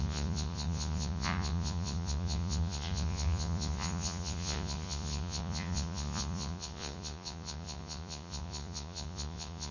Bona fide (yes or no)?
no